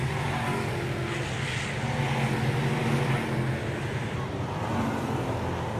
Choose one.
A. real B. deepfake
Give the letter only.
A